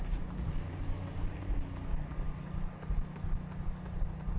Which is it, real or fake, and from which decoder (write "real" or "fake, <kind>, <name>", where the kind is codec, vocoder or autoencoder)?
real